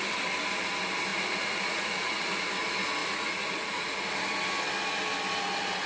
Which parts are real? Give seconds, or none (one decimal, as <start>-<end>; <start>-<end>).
0.0-1.1; 2.4-3.0; 4.1-5.9